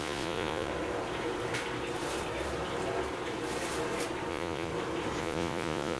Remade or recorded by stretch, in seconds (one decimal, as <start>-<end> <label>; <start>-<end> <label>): 0.0-0.7 remade; 0.7-4.3 recorded; 4.3-4.7 remade; 4.7-5.2 recorded; 5.2-6.0 remade